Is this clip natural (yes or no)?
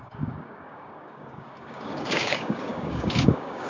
no